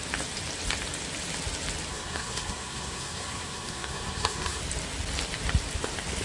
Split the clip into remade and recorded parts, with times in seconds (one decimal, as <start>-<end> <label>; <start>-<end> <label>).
0.0-1.9 recorded; 1.9-4.6 remade; 4.6-6.2 recorded